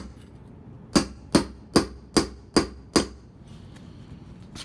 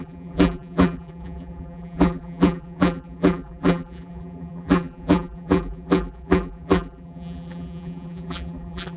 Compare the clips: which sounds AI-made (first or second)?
second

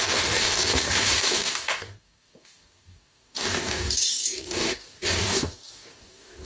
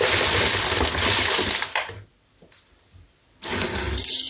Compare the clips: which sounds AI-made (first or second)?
first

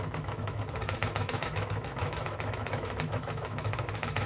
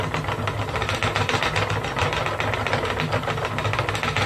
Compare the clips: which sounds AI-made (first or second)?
first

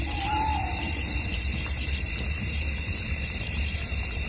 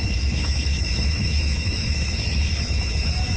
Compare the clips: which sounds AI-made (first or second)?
second